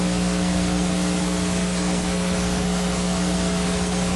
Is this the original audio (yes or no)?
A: no